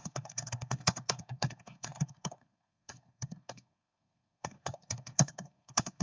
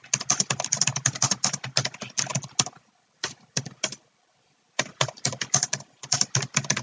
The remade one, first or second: first